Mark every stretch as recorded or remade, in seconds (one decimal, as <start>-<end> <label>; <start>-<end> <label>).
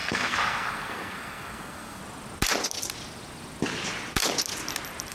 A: 0.0-2.0 remade; 2.0-5.1 recorded